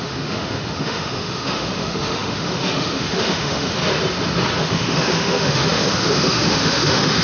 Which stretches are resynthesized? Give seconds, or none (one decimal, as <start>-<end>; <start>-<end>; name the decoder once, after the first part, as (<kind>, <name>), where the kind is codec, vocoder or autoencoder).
0.0-3.8 (autoencoder, DAC-VAE); 4.6-7.2